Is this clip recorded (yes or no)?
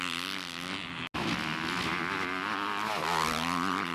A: yes